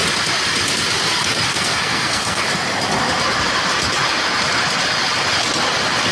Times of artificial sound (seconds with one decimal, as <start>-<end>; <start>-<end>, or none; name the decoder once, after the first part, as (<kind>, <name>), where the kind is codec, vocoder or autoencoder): 1.5-2.4 (codec, SNAC)